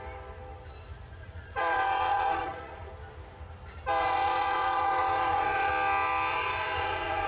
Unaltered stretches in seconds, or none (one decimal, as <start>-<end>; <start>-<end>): 0.0-1.2; 2.9-4.0; 5.7-6.3